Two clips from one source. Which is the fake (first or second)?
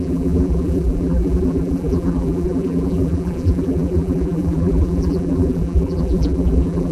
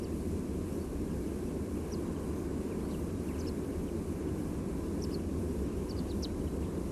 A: first